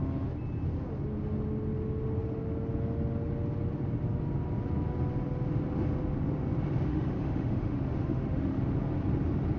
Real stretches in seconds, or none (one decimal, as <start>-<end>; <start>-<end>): 0.0-6.9; 8.6-9.6

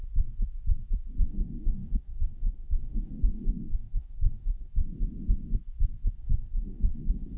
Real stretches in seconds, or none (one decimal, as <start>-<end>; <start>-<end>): 0.0-1.3; 4.7-6.2

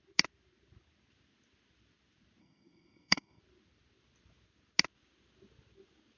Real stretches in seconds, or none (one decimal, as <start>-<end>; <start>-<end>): 0.0-2.4; 3.4-6.2